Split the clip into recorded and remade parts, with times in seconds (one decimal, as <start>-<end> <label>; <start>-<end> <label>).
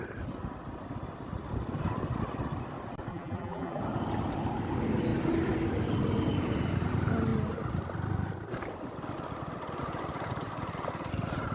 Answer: 0.0-3.1 recorded; 3.1-3.8 remade; 3.8-11.5 recorded